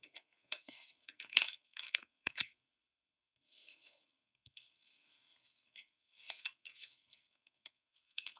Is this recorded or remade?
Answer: remade